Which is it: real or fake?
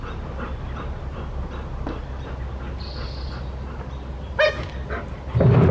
real